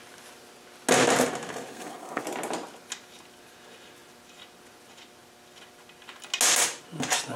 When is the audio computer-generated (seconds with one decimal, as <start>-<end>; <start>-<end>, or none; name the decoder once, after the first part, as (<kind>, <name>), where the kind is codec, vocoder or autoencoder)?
1.7-2.2 (codec, SNAC)